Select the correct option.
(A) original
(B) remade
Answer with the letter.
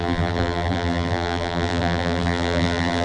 B